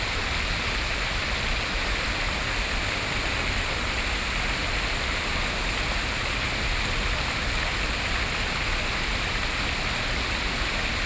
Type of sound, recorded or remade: recorded